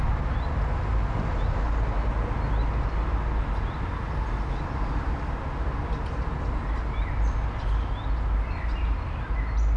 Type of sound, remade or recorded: recorded